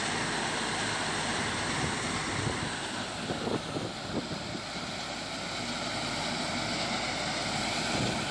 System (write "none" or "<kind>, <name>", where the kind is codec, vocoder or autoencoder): none